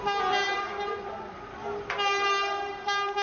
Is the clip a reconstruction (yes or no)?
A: no